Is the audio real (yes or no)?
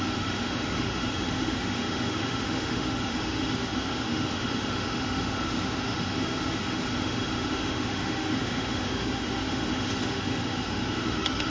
no